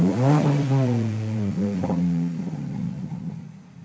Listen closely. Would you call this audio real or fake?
fake